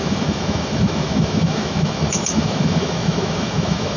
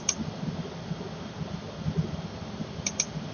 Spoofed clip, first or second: first